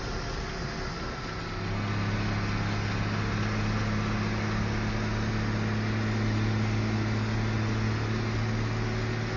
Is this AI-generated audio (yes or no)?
no